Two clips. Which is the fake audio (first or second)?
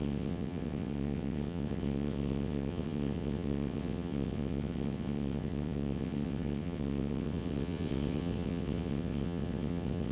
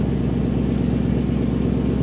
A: first